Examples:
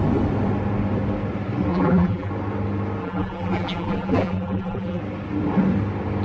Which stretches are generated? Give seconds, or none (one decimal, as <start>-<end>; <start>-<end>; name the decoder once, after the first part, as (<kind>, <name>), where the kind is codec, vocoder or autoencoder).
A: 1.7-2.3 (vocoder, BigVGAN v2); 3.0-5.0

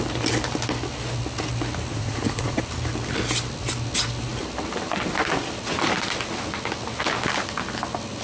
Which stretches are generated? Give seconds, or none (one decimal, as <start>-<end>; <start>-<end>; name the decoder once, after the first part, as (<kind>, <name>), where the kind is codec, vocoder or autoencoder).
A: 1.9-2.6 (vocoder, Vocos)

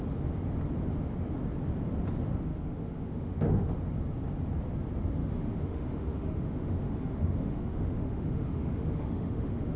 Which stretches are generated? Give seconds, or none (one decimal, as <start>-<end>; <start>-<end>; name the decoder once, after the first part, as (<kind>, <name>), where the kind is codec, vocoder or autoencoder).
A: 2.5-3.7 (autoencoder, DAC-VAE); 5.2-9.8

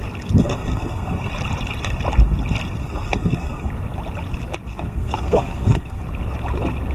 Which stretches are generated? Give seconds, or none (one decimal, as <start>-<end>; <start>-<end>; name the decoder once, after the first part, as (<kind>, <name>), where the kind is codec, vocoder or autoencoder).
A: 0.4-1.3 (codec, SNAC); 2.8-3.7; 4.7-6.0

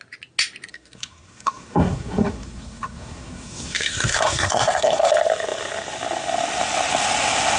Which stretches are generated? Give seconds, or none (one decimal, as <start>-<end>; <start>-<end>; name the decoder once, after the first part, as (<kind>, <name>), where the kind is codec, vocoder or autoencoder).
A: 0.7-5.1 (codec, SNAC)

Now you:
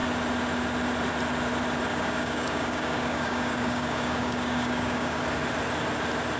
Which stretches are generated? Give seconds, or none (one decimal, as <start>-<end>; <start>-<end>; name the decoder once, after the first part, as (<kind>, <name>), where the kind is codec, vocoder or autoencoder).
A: 1.9-5.2 (codec, DAC)

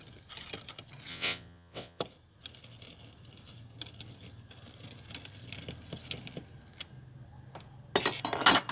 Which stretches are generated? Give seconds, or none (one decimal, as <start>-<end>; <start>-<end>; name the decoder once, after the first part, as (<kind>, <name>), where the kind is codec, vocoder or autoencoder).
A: 1.1-2.0 (vocoder, WaveNeXt)

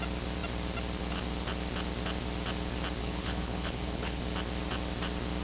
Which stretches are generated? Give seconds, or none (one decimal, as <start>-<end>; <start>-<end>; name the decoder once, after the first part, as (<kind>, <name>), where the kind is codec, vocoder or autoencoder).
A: 3.0-4.2 (codec, HILCodec)